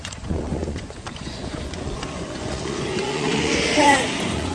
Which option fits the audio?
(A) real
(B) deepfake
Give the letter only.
B